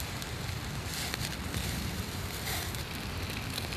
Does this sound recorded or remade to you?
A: remade